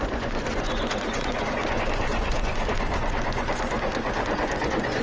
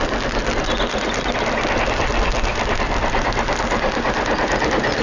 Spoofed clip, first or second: first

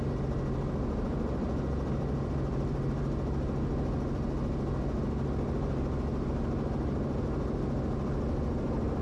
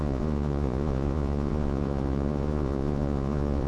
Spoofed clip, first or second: second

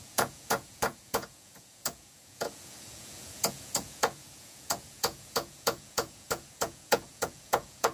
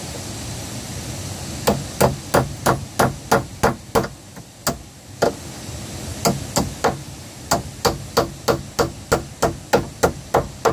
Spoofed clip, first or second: first